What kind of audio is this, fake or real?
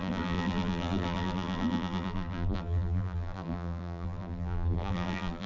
fake